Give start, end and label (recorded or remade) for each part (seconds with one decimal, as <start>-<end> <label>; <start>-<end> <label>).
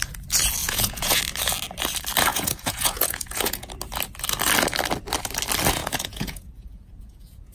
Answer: 0.0-0.6 recorded; 0.6-1.2 remade; 1.2-2.3 recorded; 2.3-3.7 remade; 3.7-5.8 recorded; 5.8-7.5 remade